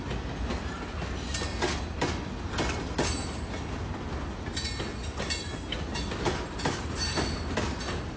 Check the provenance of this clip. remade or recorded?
recorded